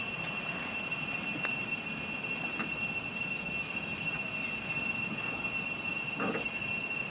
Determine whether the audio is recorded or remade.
recorded